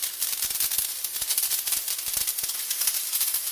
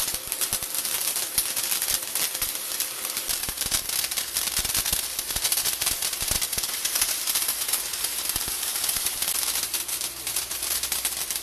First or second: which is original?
first